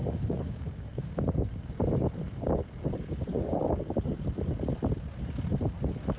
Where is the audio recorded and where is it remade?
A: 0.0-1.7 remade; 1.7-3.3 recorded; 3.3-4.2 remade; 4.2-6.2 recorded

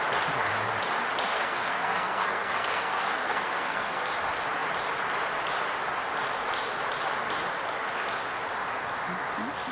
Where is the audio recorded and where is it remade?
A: 0.0-1.3 recorded; 1.3-4.1 remade; 4.1-9.7 recorded

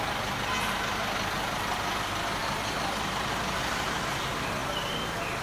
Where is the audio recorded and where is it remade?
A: 0.0-5.4 recorded

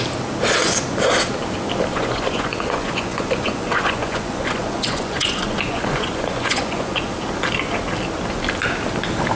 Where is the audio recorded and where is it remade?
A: 0.0-1.9 recorded; 1.9-7.1 remade; 7.1-9.3 recorded

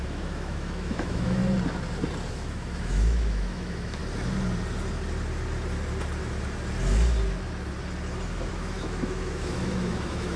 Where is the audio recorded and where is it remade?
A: 0.0-1.4 remade; 1.4-2.3 recorded; 2.3-4.0 remade; 4.0-8.5 recorded; 8.5-10.4 remade

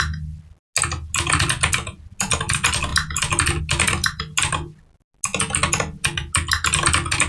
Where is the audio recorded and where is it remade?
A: 0.0-7.3 recorded

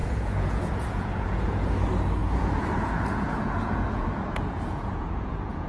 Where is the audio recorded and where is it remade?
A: 0.0-1.7 remade; 1.7-2.2 recorded; 2.2-5.7 remade